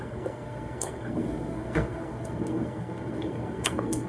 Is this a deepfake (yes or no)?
yes